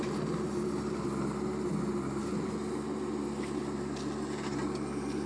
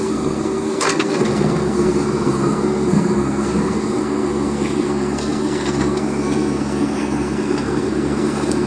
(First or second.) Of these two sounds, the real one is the first